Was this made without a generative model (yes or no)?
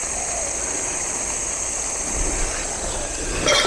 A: yes